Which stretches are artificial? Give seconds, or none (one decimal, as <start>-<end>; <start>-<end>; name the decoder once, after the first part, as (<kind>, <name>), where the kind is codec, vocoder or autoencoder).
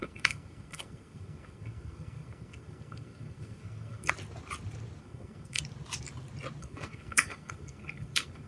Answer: 0.0-4.1 (codec, SNAC); 5.0-5.6; 6.6-8.5